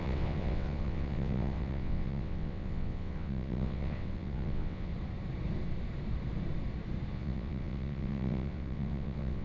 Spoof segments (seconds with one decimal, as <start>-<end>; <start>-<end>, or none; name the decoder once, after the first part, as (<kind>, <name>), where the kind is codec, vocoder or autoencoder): 0.0-4.9 (vocoder, WaveNeXt); 7.1-9.4